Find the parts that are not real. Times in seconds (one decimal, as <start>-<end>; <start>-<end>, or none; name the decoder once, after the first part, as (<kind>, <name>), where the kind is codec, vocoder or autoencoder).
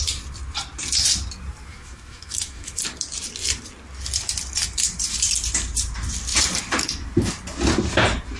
1.7-2.8 (autoencoder, DAC-VAE)